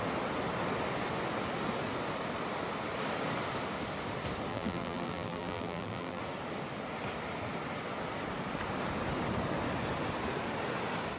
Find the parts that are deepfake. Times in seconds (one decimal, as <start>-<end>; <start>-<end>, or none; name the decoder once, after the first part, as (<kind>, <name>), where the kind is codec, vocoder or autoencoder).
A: 4.5-6.2 (vocoder, BigVGAN v2)